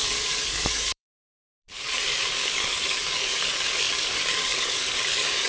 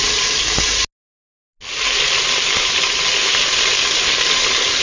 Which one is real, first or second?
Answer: second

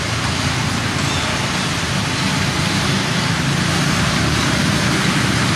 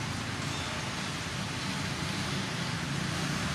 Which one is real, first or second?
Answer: second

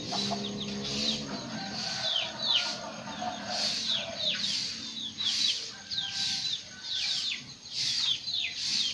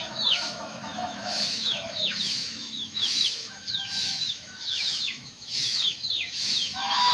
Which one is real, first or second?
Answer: first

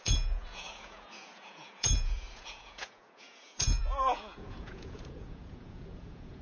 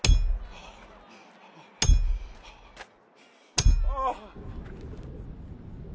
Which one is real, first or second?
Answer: second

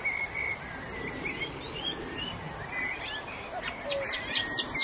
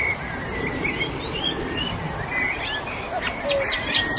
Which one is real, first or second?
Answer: first